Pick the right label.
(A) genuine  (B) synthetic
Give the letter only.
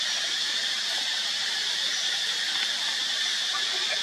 A